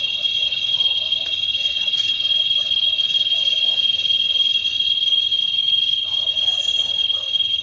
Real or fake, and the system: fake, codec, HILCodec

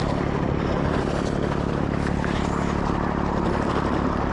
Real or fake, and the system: real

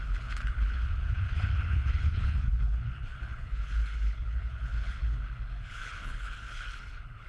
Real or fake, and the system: fake, codec, HILCodec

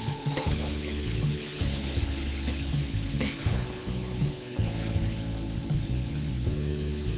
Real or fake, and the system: fake, codec, HILCodec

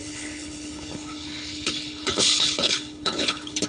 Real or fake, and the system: fake, codec, HILCodec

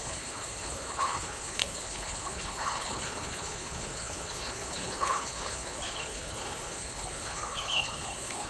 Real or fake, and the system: fake, codec, HILCodec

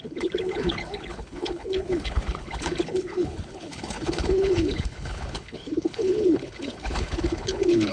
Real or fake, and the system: fake, codec, HILCodec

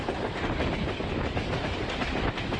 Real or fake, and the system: real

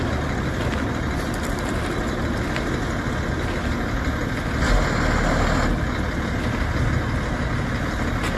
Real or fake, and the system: real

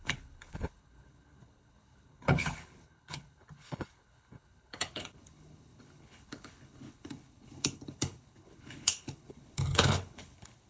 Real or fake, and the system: fake, codec, HILCodec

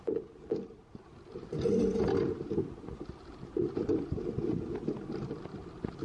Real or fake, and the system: real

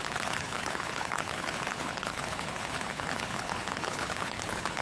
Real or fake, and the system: fake, codec, HILCodec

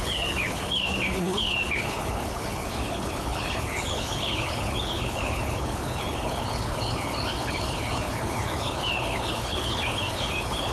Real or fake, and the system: fake, codec, HILCodec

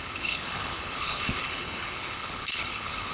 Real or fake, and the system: fake, codec, HILCodec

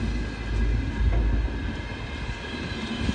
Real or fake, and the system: real